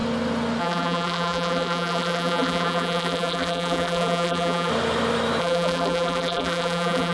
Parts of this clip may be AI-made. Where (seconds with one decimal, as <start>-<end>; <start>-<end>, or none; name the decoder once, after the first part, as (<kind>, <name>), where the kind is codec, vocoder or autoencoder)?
0.6-4.7 (vocoder, BigVGAN v2); 5.4-7.1

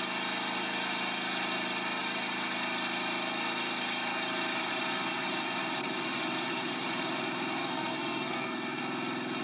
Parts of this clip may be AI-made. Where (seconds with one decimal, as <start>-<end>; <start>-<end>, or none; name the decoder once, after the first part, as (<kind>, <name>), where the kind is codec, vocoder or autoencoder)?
7.6-8.8 (codec, SNAC)

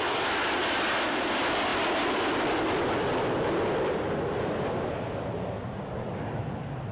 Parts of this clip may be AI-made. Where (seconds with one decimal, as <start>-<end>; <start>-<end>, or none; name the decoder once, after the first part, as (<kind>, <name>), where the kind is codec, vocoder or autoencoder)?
none

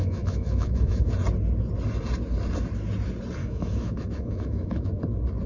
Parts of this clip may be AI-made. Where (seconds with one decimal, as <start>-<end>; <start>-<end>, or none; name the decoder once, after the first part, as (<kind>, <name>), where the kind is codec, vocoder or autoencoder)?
0.0-1.1 (autoencoder, DAC-VAE); 3.4-5.0

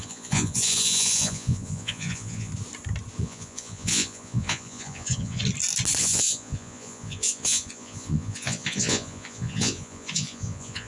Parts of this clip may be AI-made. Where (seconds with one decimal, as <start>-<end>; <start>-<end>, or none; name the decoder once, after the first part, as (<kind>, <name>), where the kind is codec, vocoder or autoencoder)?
0.0-2.5 (vocoder, Vocos); 3.2-5.4; 6.0-10.9

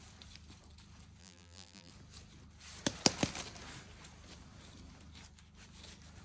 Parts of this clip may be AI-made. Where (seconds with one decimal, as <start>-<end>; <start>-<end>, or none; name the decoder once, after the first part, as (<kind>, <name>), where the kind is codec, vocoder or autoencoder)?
1.2-1.9 (vocoder, BigVGAN v2)

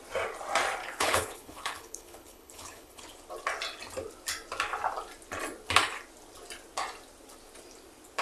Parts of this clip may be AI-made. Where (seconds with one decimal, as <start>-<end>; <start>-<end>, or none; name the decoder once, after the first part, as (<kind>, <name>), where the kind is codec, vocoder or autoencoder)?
0.8-3.0 (codec, HILCodec)